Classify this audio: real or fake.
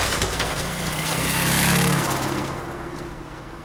fake